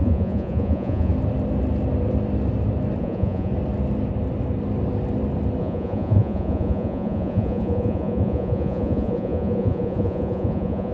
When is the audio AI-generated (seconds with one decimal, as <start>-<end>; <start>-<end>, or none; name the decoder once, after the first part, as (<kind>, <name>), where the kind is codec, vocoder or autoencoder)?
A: 0.0-1.1 (vocoder, Vocos); 3.0-3.5; 5.6-10.9